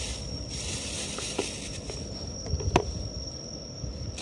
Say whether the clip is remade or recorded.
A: recorded